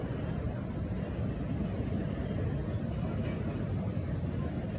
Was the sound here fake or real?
real